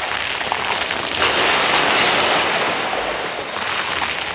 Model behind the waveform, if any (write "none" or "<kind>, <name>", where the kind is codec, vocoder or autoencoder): none